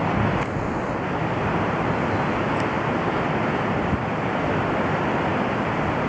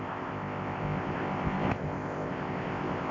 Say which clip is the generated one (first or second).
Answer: second